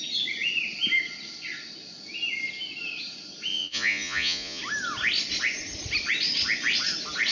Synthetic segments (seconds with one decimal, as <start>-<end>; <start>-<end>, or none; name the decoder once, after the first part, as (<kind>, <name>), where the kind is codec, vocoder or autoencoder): 3.5-4.6 (vocoder, Vocos)